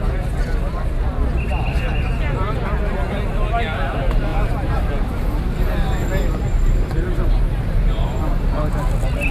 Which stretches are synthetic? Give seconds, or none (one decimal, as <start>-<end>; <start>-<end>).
4.3-4.9; 6.0-8.4